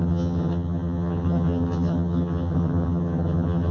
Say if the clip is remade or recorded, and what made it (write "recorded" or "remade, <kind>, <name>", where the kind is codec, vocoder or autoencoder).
remade, vocoder, HiFi-GAN